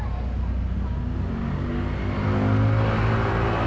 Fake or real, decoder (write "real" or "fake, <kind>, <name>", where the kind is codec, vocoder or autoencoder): real